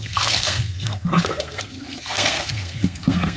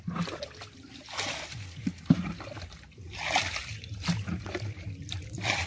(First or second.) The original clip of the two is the second